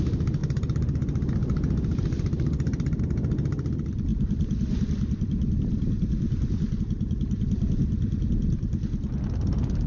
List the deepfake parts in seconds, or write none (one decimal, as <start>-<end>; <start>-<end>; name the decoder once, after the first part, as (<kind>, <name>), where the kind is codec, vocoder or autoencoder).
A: none